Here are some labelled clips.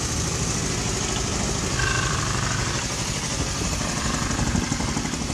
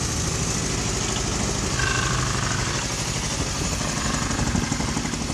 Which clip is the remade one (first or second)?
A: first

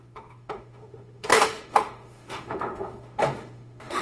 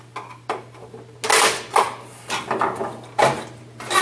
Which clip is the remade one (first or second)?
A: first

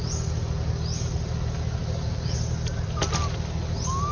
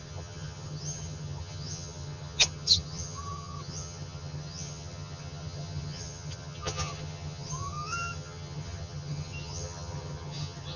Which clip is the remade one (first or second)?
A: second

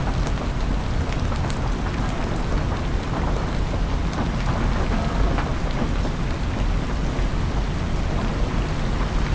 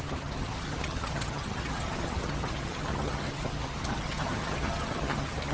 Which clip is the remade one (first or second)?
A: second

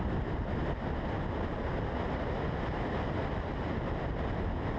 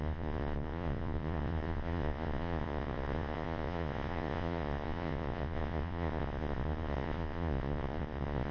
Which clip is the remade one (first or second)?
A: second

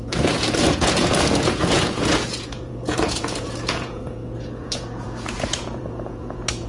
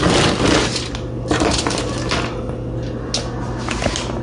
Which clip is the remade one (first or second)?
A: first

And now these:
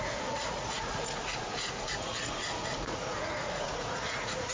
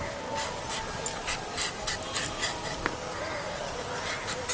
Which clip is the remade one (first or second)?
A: first